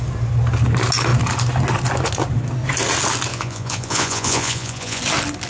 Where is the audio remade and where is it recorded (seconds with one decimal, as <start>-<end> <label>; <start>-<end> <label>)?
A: 0.0-3.3 recorded; 3.3-5.0 remade; 5.0-5.5 recorded